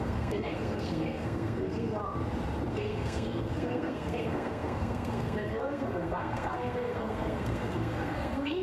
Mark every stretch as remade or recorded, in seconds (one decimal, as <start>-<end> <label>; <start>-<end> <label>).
0.0-2.0 remade; 2.0-2.7 recorded; 2.7-8.6 remade